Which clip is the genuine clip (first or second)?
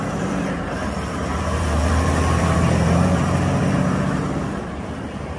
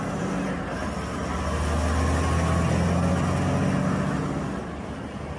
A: second